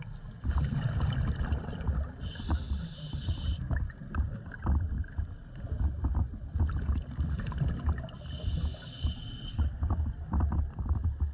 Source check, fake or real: real